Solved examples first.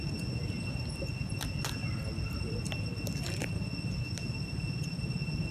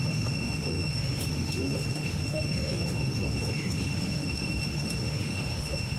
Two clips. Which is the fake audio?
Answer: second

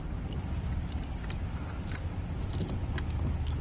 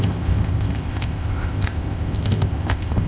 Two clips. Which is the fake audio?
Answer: second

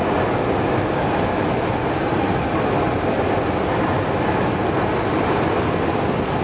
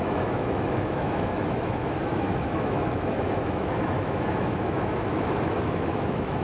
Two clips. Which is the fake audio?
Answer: second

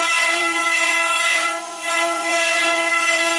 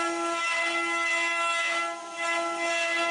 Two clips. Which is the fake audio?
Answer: first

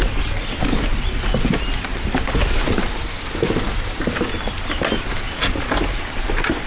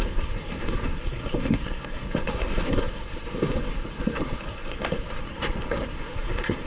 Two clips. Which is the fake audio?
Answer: second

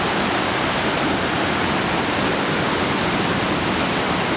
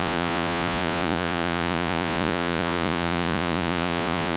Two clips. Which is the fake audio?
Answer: second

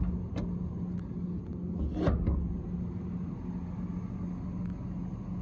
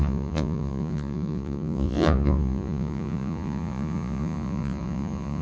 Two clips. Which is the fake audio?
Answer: second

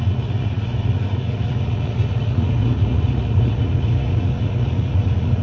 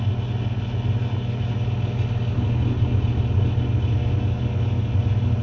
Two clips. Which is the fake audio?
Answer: first